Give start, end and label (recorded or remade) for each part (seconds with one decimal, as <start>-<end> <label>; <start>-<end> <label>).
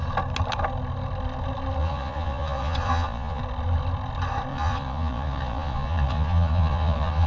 0.0-1.8 recorded; 1.8-3.4 remade; 3.4-4.5 recorded; 4.5-7.3 remade